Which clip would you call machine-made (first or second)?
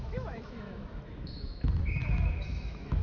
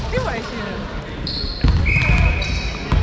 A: first